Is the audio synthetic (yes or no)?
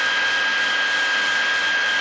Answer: no